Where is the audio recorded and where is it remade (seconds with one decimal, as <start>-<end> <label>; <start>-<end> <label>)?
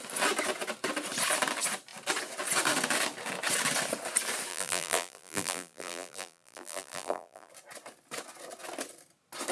0.0-4.5 recorded; 4.5-7.5 remade; 7.5-9.5 recorded